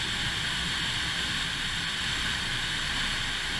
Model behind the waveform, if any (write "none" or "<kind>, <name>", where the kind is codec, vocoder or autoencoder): none